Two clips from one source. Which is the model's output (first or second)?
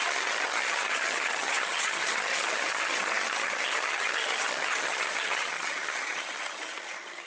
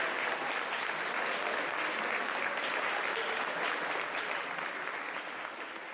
first